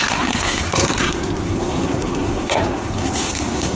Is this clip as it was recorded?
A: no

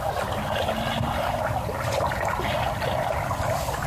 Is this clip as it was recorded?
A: yes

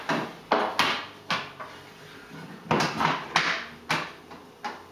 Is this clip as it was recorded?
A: yes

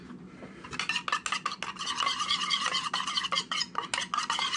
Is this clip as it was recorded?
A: yes